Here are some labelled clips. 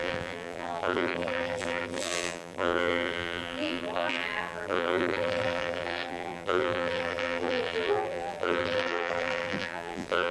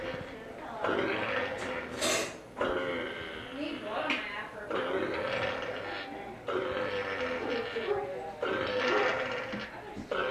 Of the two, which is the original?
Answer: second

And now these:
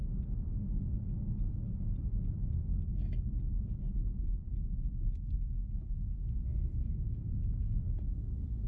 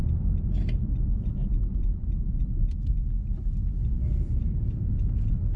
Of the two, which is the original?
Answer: second